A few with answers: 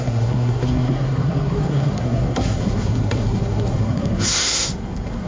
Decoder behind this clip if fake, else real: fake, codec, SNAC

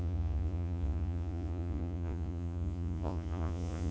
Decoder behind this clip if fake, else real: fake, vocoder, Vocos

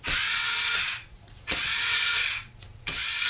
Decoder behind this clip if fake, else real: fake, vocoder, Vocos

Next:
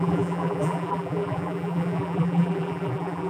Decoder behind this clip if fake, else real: fake, vocoder, BigVGAN v2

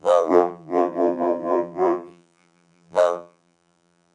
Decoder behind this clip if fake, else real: fake, vocoder, BigVGAN v2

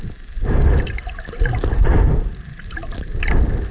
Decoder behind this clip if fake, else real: real